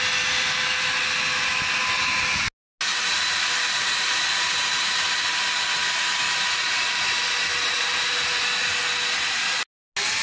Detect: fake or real real